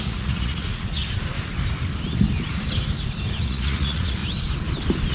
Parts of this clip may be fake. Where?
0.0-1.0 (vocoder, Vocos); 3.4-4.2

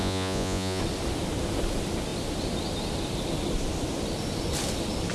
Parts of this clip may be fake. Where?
0.0-0.8 (vocoder, Vocos)

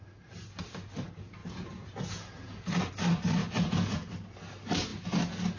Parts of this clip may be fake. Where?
1.4-2.9 (vocoder, Vocos); 3.4-4.1

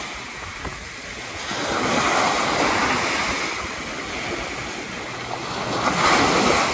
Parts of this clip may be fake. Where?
none